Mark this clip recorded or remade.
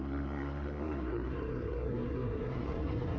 remade